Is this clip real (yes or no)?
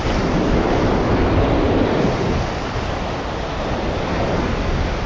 yes